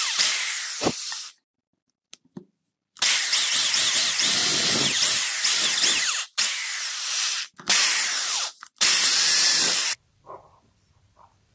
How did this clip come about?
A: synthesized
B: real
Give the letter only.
A